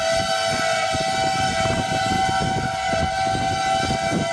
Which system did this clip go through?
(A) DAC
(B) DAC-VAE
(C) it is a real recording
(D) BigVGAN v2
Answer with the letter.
C